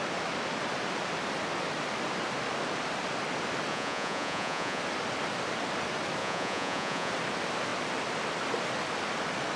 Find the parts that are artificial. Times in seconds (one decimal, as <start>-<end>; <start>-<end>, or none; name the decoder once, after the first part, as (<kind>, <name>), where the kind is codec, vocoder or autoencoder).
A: 3.7-4.8 (vocoder, Vocos); 6.2-7.1